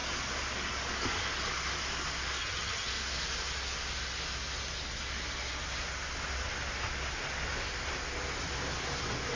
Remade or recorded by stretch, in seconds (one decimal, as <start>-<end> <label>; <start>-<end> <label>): 0.0-2.4 recorded; 2.4-2.9 remade; 2.9-9.4 recorded